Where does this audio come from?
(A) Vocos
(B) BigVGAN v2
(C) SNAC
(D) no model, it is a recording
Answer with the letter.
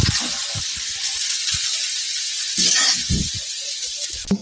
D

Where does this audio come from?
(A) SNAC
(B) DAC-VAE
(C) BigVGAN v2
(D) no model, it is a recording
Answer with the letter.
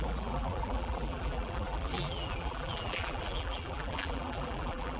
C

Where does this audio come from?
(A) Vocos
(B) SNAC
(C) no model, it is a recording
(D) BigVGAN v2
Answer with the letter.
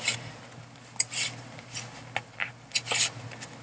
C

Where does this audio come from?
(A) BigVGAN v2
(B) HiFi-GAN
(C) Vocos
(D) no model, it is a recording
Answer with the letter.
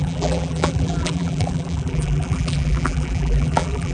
A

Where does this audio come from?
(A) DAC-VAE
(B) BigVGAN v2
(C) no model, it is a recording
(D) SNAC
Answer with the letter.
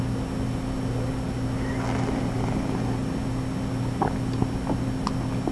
C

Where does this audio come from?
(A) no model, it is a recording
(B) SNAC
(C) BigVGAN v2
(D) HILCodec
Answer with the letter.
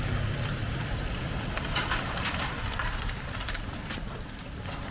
C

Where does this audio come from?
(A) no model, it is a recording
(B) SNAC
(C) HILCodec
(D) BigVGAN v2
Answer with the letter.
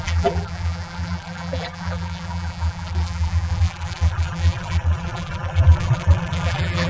D